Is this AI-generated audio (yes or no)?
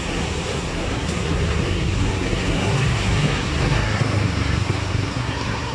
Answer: yes